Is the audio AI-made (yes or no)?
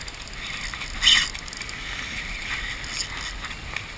no